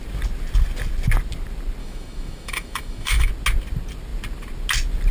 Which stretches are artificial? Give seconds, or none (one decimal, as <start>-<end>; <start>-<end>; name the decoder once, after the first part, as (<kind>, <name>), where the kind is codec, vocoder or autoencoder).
1.8-3.3 (autoencoder, DAC-VAE)